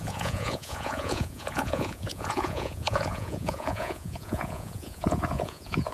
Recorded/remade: remade